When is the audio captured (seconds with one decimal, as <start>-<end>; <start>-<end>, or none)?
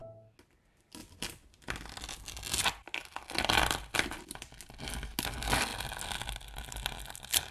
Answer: 0.0-7.5